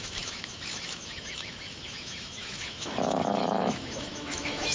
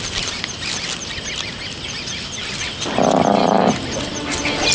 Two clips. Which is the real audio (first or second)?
second